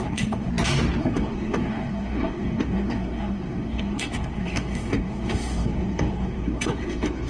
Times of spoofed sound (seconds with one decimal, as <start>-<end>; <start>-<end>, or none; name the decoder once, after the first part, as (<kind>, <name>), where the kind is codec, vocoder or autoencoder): 0.0-0.5 (codec, SNAC); 1.0-7.3